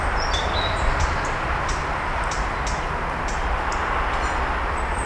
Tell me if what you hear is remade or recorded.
remade